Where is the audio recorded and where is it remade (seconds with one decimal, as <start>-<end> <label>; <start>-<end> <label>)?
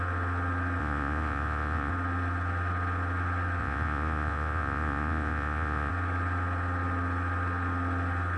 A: 0.0-0.8 recorded; 0.8-1.9 remade; 1.9-3.6 recorded; 3.6-5.9 remade; 5.9-8.4 recorded